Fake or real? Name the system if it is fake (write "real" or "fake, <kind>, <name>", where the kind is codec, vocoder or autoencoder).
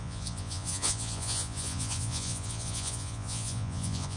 fake, vocoder, Vocos